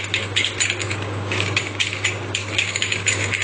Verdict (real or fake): fake